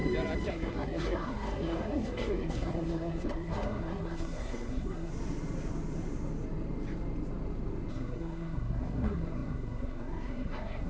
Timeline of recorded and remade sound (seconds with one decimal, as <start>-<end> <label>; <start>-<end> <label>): 0.0-0.5 recorded; 0.5-5.1 remade; 5.1-7.9 recorded; 7.9-10.9 remade